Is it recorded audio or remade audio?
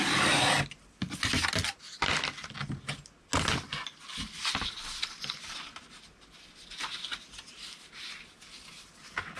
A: recorded